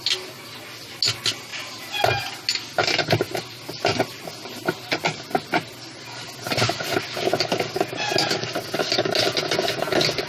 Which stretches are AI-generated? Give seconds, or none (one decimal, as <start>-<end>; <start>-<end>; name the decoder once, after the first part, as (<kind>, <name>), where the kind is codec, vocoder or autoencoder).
none